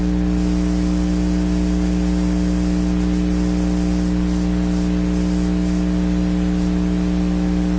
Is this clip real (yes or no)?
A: yes